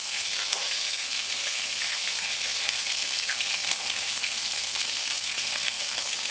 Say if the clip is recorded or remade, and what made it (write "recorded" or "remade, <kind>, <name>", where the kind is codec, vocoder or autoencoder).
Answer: remade, codec, SNAC